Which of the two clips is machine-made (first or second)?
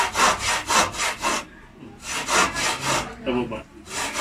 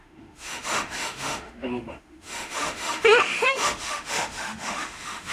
second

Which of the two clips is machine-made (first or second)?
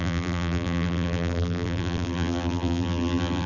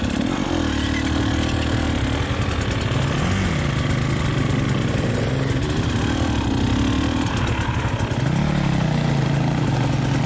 first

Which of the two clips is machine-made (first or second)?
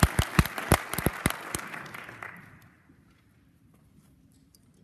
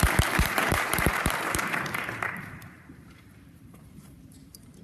second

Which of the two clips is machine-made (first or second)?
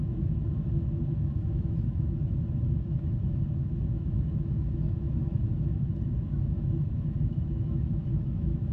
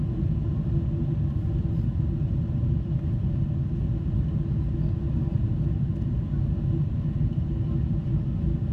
first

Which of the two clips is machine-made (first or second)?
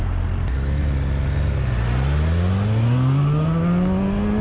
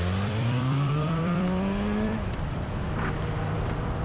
second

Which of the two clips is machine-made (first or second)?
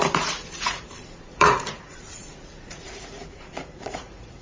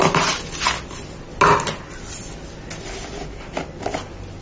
first